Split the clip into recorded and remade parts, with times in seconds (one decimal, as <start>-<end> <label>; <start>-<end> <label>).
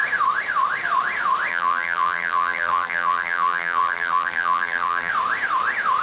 0.0-1.5 recorded; 1.5-5.1 remade; 5.1-6.0 recorded